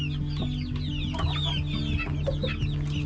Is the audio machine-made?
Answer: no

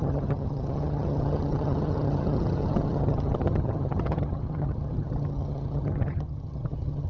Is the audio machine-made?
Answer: yes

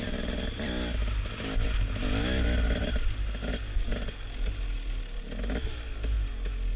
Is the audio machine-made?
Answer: no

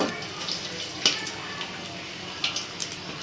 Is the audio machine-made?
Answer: no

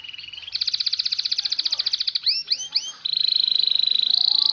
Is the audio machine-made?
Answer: no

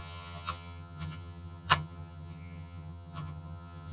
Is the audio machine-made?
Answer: yes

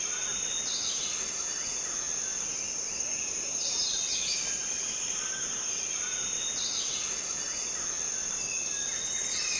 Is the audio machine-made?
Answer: no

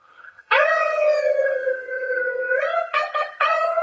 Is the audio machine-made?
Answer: yes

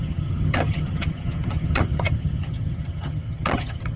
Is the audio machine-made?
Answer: yes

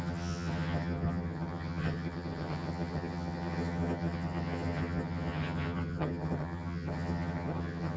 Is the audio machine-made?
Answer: yes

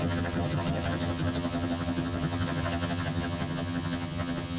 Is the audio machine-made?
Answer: yes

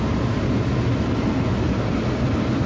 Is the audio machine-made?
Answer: no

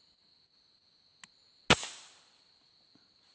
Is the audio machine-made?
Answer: no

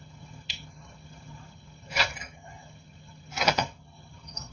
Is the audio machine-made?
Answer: yes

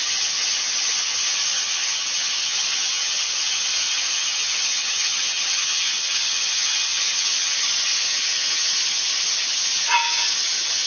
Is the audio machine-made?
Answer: yes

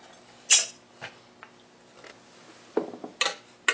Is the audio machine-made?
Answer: no